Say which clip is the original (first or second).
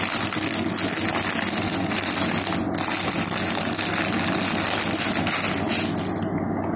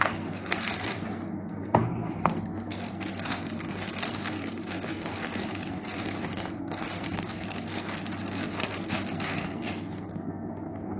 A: first